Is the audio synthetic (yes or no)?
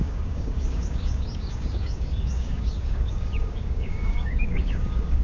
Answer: yes